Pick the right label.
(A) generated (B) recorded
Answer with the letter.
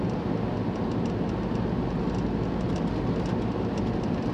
B